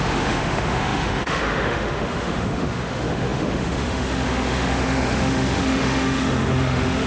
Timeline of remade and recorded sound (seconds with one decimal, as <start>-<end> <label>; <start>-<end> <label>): 0.0-7.1 remade